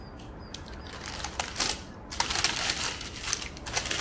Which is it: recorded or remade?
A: recorded